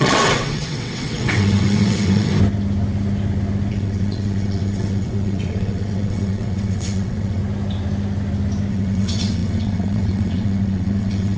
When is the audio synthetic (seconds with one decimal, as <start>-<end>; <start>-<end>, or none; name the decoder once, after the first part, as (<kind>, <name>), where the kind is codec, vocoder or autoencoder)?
0.0-2.3 (vocoder, WaveNeXt); 3.7-7.4; 8.7-11.4